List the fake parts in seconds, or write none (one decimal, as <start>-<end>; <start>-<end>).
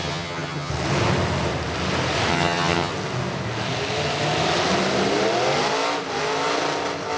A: 0.0-0.7; 2.3-2.9